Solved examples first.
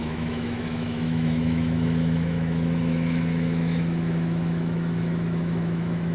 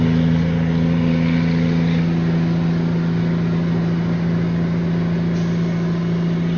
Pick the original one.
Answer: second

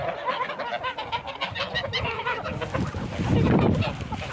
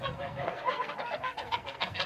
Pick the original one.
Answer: first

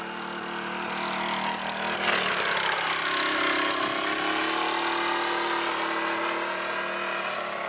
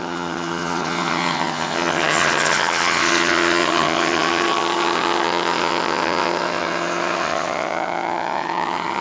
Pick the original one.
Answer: first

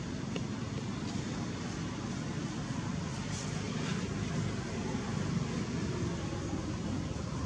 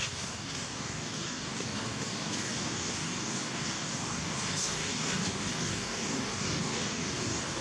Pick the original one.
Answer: first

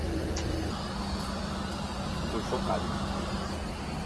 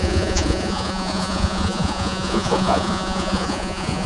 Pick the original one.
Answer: first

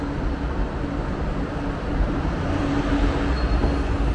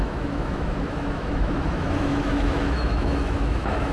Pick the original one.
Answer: first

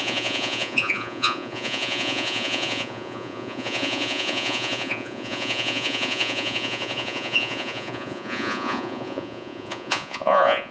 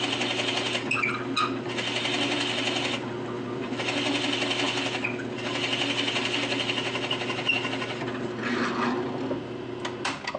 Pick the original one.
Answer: second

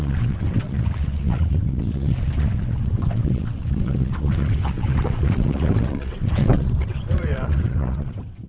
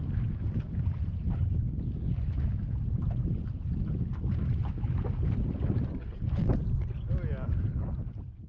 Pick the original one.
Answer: second